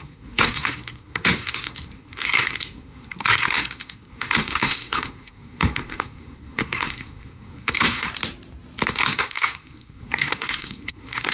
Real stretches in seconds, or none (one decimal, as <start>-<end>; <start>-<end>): 8.1-8.9